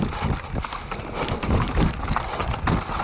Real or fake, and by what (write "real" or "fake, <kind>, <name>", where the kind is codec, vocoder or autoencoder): real